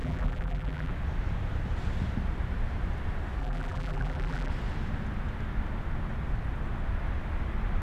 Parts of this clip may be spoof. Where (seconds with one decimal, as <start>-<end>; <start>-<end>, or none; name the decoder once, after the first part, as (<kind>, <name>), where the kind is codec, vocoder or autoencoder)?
0.0-0.9 (vocoder, BigVGAN v2); 3.4-4.5